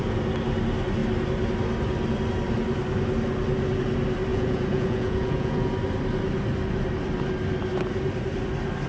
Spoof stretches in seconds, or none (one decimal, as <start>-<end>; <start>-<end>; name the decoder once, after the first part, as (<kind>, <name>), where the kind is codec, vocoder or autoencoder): 4.3-5.7 (vocoder, Vocos)